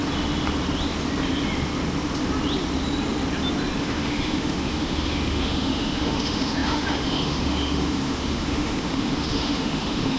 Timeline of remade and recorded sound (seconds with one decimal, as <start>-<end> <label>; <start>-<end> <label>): 0.0-3.8 recorded; 3.8-10.2 remade